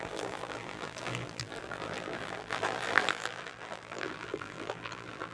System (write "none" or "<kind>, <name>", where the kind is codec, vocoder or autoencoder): vocoder, BigVGAN v2